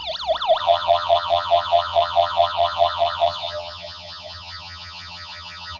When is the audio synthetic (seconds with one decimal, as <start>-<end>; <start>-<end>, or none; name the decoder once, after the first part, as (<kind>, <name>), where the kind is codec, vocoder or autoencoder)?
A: 0.6-5.8 (vocoder, HiFi-GAN)